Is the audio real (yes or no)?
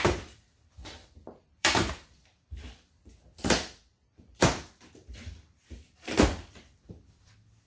no